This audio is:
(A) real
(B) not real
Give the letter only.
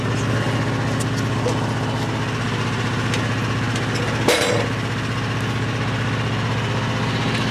A